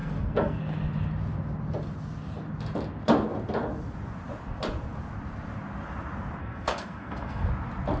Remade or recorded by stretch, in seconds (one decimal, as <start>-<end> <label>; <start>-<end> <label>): 0.0-0.6 remade; 0.6-6.4 recorded; 6.4-7.5 remade; 7.5-8.0 recorded